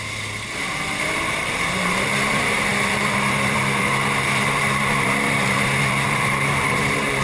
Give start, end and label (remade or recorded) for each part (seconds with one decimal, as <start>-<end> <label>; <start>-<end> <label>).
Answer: 0.0-7.2 remade